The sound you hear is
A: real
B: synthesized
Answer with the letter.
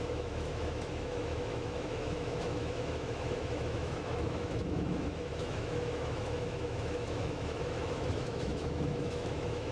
B